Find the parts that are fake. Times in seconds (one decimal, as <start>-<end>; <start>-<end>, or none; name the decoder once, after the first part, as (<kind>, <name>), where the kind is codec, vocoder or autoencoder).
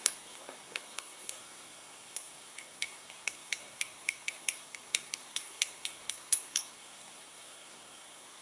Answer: 0.0-8.4 (codec, SNAC)